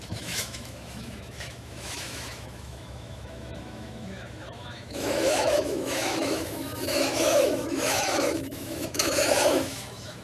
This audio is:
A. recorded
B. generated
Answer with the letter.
B